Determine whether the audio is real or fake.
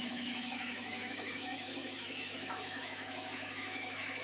fake